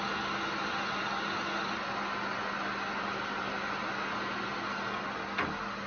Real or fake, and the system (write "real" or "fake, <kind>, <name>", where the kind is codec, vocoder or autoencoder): real